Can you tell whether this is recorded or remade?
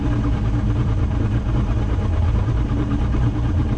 remade